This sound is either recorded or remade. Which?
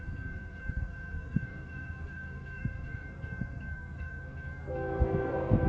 remade